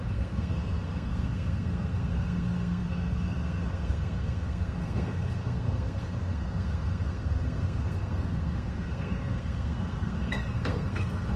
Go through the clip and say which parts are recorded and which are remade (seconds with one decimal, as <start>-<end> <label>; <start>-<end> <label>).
0.0-11.4 remade